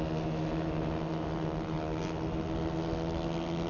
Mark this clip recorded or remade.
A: recorded